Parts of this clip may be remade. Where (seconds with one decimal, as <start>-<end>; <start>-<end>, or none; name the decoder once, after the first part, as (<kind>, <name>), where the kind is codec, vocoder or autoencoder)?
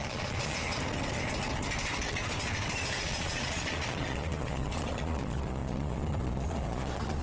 0.0-0.6 (vocoder, Vocos); 3.0-7.2